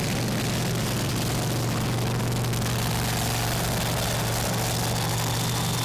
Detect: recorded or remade recorded